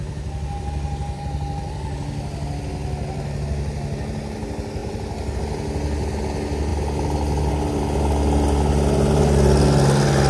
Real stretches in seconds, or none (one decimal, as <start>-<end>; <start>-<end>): 0.0-4.8; 5.4-10.3